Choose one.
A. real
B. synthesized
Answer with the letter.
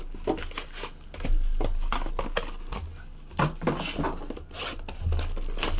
A